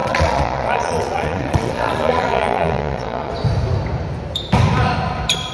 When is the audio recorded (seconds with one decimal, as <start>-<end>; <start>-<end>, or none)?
3.3-5.5